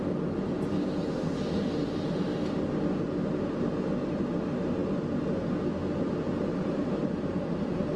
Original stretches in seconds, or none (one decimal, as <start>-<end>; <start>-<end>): 0.0-6.5